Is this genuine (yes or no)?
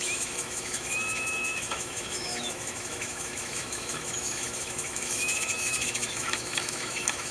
no